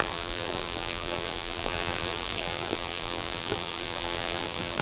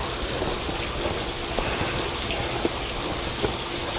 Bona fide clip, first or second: second